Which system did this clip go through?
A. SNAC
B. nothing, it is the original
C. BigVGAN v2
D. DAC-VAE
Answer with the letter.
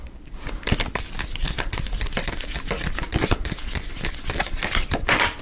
C